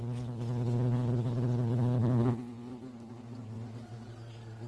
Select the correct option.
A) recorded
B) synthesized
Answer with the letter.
A